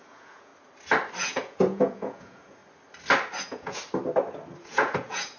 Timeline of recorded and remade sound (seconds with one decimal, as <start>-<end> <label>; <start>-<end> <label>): 0.0-0.5 remade; 0.5-1.2 recorded; 1.2-2.6 remade; 2.6-3.4 recorded; 3.4-3.8 remade; 3.8-4.6 recorded; 4.6-5.4 remade